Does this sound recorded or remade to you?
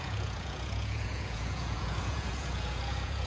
remade